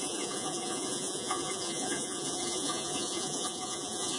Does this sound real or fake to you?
fake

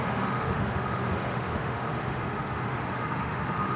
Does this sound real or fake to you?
fake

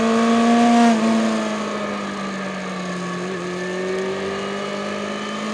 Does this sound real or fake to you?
real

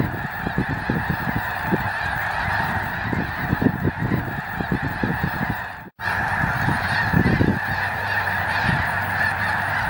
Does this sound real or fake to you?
fake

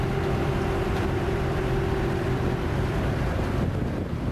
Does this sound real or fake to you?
fake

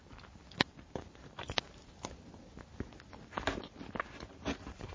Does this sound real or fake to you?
real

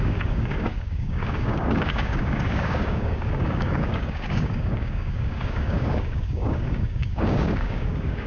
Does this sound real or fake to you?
fake